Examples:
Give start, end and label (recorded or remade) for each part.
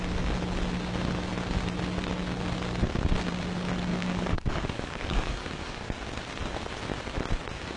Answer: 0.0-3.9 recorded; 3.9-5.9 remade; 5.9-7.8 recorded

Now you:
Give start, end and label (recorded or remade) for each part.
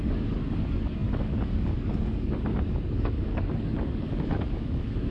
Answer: 0.0-5.1 remade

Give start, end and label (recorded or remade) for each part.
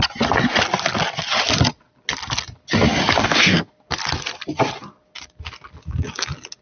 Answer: 0.0-3.2 recorded; 3.2-3.7 remade; 3.7-6.6 recorded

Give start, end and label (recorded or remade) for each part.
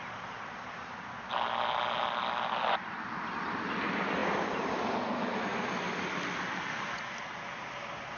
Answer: 0.0-8.2 recorded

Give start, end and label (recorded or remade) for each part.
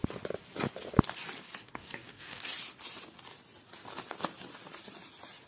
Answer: 0.0-1.6 recorded; 1.6-2.4 remade; 2.4-5.5 recorded